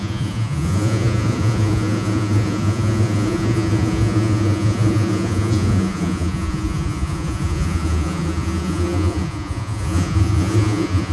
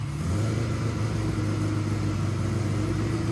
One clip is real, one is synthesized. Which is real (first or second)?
second